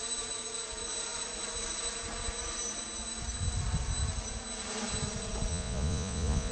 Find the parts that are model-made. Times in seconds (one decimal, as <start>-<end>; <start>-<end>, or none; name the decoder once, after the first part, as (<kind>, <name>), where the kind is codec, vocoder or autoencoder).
5.5-6.5 (vocoder, Vocos)